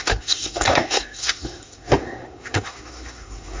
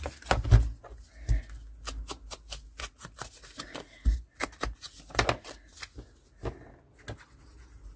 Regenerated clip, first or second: first